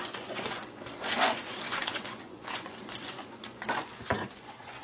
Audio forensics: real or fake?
fake